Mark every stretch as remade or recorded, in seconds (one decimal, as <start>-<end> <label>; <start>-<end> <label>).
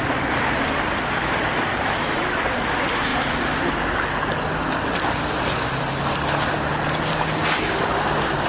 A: 0.0-8.5 recorded